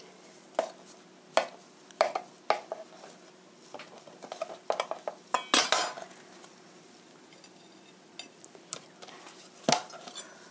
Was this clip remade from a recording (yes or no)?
no